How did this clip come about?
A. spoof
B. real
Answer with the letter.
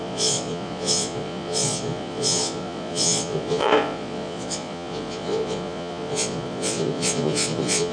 A